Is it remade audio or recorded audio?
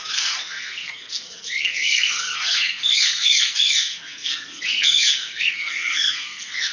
remade